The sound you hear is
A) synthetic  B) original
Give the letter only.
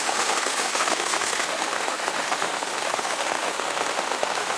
A